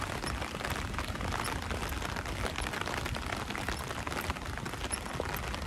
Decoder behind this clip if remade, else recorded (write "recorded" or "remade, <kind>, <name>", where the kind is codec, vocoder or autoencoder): recorded